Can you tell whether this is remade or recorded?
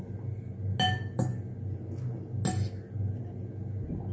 recorded